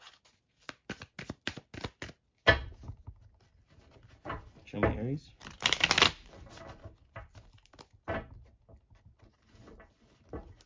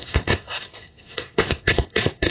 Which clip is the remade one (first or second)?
second